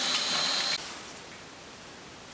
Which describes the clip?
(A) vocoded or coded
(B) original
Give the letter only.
B